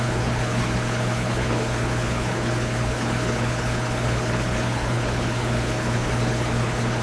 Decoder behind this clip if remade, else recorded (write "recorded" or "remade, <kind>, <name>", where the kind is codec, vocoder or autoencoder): remade, codec, HILCodec